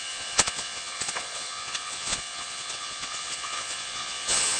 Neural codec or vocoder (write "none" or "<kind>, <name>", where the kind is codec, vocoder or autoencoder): vocoder, Vocos